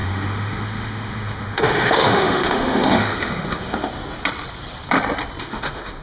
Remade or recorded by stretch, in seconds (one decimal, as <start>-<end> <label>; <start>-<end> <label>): 0.0-3.9 remade; 3.9-5.4 recorded; 5.4-6.0 remade